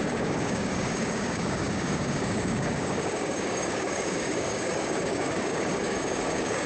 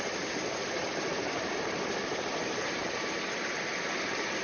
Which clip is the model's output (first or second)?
first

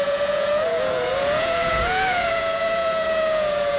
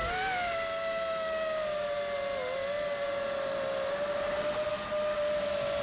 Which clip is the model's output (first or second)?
first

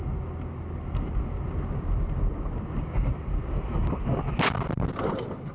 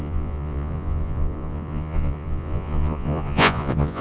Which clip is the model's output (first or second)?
second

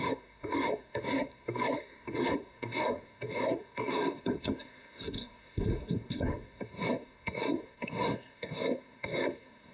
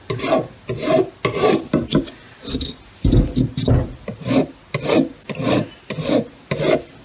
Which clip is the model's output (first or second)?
first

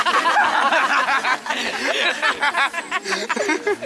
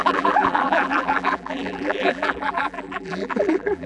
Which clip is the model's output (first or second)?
second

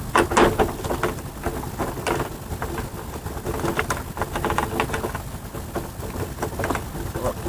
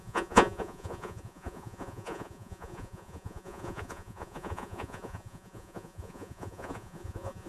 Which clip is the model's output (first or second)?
second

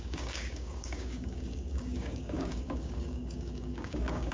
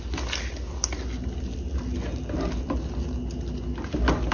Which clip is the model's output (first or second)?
first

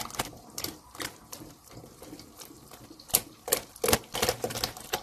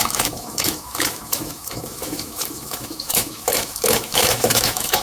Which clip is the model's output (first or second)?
second